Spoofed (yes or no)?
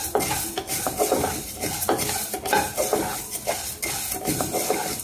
no